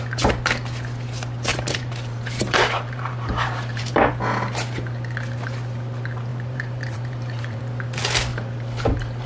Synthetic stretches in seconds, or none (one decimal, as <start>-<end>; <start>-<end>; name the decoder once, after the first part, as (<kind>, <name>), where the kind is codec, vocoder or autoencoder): 1.5-4.1 (vocoder, BigVGAN v2); 6.3-7.6; 8.3-9.3